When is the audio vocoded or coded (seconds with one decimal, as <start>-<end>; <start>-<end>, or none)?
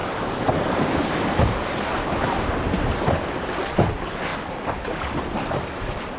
3.7-6.2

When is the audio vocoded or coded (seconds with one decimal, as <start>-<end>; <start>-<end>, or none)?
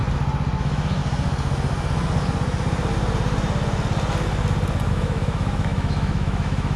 0.6-1.0; 4.9-6.8